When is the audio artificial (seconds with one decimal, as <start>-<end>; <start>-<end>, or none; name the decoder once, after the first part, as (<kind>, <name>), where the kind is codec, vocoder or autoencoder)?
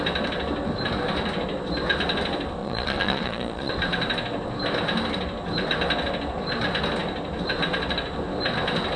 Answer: 2.6-3.7 (vocoder, Vocos)